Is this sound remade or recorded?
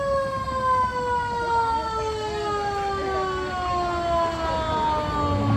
recorded